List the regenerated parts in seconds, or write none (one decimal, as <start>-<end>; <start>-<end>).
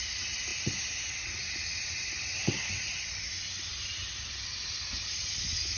none